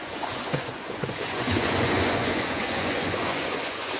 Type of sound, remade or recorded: remade